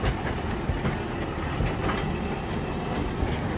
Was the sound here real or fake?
real